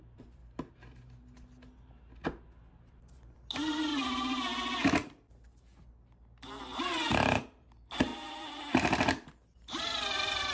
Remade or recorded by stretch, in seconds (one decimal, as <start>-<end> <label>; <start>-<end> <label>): 0.0-0.4 remade; 0.4-2.9 recorded; 2.9-3.9 remade; 3.9-6.6 recorded; 6.6-8.1 remade; 8.1-8.6 recorded; 8.6-10.5 remade